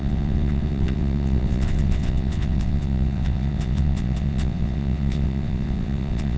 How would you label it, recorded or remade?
remade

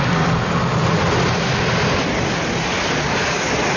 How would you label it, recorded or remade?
recorded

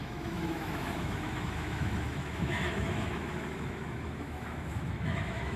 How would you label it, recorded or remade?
remade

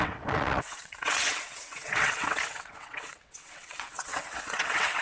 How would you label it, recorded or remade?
remade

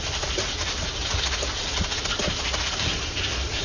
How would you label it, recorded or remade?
remade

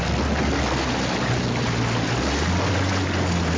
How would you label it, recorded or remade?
recorded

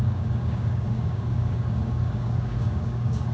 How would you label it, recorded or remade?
remade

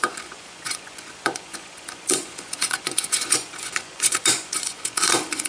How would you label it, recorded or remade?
remade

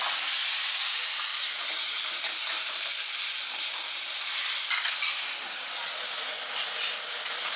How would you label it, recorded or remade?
recorded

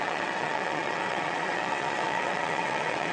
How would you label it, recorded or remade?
remade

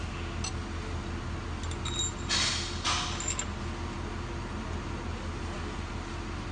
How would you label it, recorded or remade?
recorded